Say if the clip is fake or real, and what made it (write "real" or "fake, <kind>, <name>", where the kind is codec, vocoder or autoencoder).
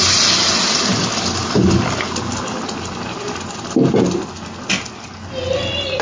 real